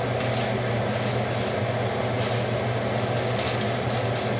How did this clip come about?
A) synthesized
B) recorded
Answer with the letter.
B